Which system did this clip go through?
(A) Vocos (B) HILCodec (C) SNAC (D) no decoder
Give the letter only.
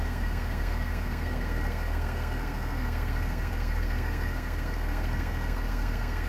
C